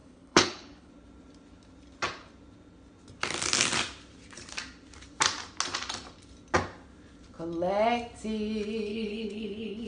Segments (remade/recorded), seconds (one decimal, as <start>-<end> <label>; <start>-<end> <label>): 0.0-0.9 remade; 0.9-8.9 recorded; 8.9-9.9 remade